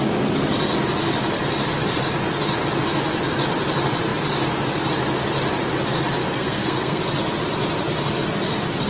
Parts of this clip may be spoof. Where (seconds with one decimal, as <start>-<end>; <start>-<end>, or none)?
6.2-7.0